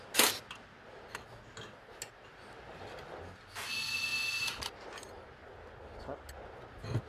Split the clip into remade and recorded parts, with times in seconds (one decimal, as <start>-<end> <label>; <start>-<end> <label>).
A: 0.0-7.1 recorded